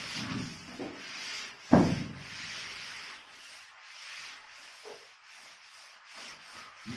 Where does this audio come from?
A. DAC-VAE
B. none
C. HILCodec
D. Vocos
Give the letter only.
D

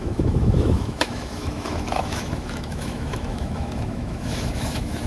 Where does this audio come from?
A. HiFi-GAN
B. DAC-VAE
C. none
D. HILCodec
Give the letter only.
B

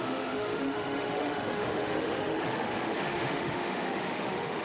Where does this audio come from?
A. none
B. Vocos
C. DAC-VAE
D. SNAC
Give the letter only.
C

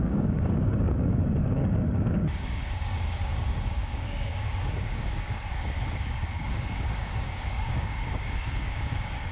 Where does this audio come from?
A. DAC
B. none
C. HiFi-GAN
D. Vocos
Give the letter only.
A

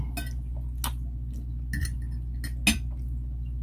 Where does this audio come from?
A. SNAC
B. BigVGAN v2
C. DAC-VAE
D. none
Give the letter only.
D